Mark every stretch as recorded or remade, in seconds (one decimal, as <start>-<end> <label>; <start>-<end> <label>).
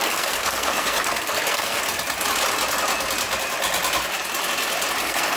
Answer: 0.0-1.8 remade; 1.8-5.0 recorded; 5.0-5.4 remade